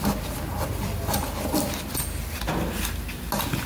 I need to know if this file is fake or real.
real